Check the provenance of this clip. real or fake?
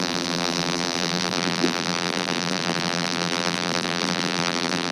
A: fake